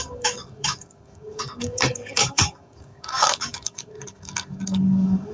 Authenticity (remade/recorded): remade